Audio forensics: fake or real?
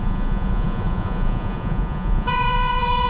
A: fake